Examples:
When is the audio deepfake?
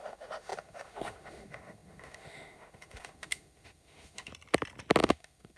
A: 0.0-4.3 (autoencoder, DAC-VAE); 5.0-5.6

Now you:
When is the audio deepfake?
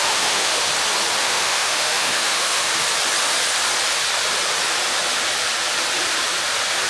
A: 0.0-0.7 (autoencoder, DAC-VAE); 1.2-2.7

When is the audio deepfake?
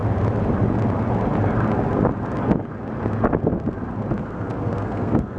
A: 4.2-5.4 (codec, SNAC)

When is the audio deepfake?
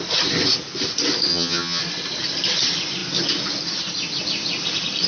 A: 1.3-1.8 (vocoder, HiFi-GAN)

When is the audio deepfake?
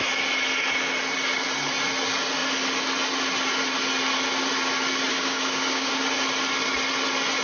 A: 5.1-5.9 (codec, DAC)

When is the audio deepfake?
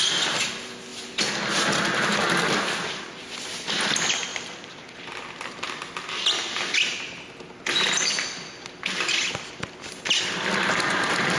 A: none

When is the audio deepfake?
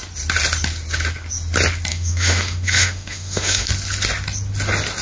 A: 1.9-3.7 (autoencoder, DAC-VAE)